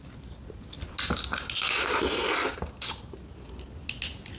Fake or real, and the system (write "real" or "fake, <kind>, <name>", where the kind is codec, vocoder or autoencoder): real